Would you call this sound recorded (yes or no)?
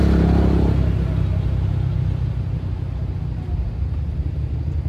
yes